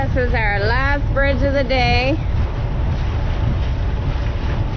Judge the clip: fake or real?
real